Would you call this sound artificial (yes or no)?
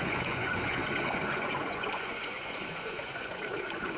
yes